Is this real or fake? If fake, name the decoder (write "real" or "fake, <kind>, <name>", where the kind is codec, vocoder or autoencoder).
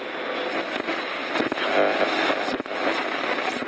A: real